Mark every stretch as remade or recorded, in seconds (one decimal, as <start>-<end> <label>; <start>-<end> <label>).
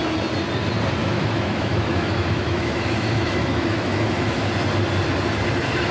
0.0-1.0 recorded; 1.0-4.5 remade; 4.5-5.9 recorded